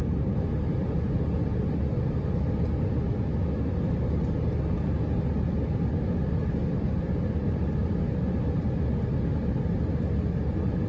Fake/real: real